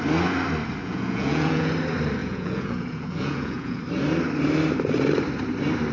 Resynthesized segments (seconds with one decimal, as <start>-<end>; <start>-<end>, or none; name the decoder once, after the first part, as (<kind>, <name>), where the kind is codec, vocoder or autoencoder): 0.8-1.7 (vocoder, Vocos); 2.2-3.8